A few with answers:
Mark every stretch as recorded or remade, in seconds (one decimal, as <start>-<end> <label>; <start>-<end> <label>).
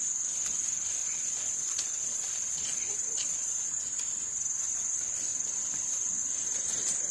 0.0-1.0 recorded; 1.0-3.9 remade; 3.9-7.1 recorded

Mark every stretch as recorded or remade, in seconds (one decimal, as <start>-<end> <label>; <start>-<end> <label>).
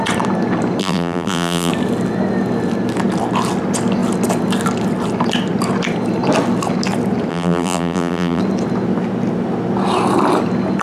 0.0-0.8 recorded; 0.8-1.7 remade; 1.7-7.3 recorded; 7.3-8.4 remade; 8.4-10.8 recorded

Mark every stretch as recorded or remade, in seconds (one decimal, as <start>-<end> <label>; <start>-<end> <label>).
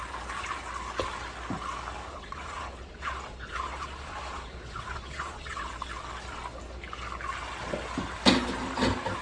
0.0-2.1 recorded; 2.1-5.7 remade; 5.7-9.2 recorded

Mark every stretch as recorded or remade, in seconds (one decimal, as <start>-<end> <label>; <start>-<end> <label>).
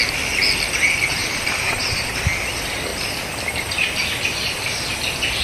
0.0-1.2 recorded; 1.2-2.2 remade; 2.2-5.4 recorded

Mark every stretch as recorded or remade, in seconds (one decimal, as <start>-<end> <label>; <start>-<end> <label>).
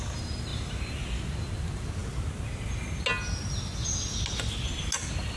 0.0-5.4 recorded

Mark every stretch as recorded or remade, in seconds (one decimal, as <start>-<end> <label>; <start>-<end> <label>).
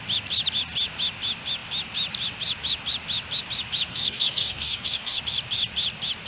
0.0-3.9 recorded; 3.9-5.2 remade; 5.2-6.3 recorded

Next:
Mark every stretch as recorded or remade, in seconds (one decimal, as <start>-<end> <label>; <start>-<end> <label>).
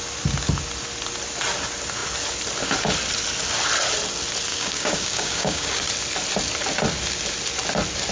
0.0-4.5 recorded; 4.5-5.8 remade; 5.8-8.1 recorded